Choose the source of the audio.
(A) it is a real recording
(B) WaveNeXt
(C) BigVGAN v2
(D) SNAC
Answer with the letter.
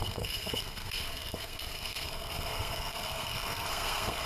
D